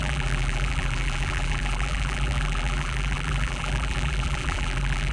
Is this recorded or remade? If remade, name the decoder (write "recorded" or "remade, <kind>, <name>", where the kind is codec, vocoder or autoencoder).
remade, vocoder, BigVGAN v2